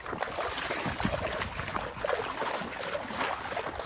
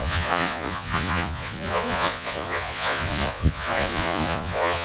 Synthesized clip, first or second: second